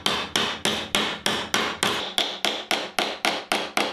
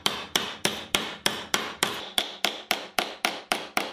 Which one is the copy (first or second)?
second